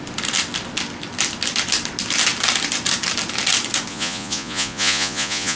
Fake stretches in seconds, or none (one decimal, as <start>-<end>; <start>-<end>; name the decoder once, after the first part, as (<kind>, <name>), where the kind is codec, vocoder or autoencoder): 3.9-5.6 (vocoder, Vocos)